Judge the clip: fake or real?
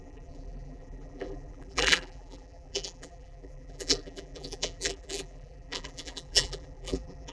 fake